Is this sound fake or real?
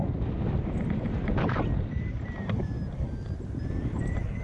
real